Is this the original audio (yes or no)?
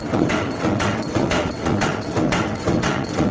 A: no